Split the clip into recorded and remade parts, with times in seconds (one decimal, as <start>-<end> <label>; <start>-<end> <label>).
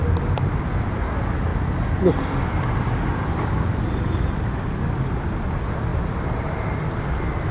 0.0-0.7 remade; 0.7-5.9 recorded; 5.9-6.9 remade; 6.9-7.5 recorded